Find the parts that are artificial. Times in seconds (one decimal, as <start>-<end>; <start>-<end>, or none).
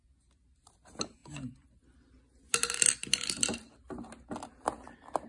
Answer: none